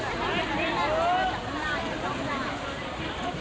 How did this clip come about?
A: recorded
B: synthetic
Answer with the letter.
A